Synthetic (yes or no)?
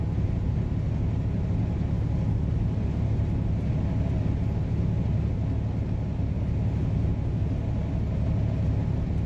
no